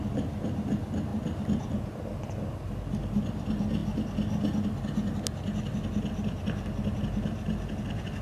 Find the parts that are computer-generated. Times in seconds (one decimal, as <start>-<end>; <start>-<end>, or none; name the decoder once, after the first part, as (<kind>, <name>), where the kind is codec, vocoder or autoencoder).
none